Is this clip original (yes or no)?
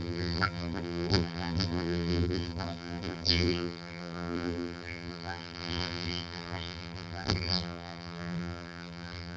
no